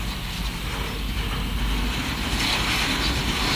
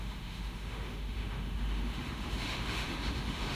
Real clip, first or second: first